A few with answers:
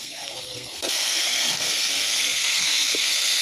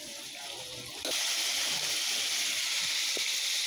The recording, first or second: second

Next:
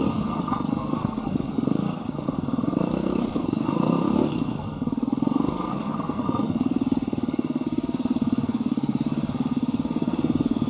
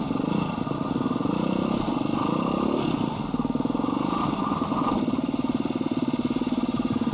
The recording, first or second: second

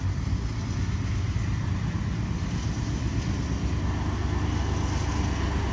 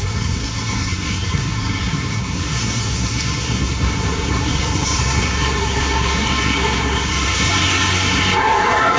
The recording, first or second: first